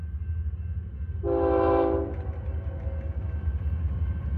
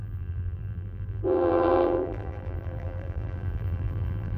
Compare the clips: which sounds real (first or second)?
first